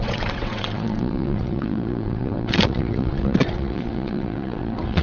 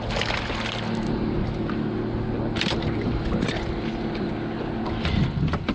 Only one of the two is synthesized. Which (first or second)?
first